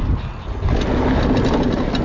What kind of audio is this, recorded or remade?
recorded